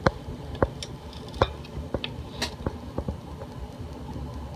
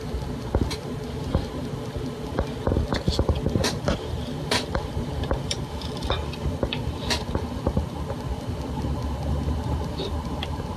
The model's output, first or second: second